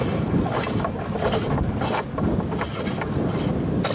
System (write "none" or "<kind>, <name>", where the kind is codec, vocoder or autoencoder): none